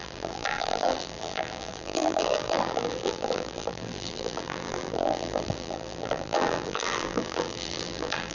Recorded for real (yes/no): no